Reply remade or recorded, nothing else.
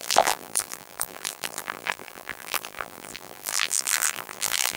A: remade